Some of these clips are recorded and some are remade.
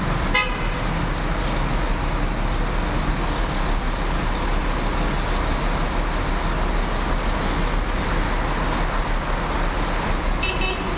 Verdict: recorded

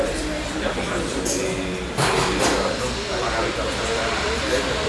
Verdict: recorded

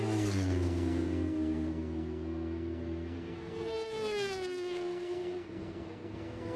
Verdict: remade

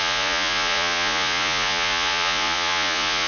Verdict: remade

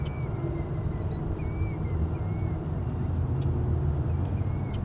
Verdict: recorded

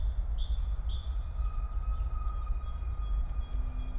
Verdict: recorded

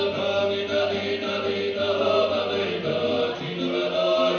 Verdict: recorded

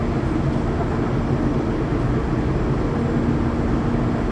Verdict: recorded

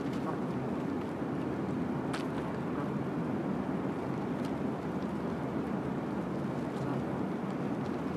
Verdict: recorded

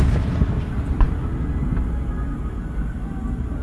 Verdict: recorded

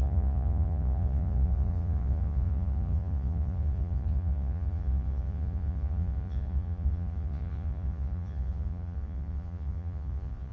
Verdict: remade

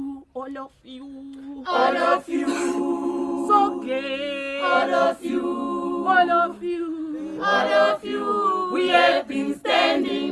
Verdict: recorded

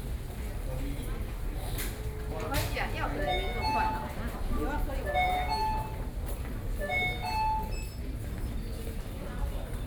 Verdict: recorded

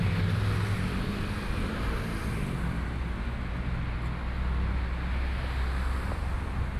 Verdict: recorded